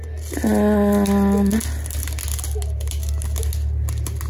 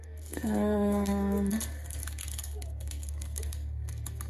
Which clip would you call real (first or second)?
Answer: first